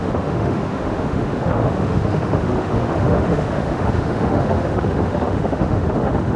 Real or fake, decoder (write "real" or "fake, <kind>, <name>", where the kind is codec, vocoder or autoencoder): fake, autoencoder, DAC-VAE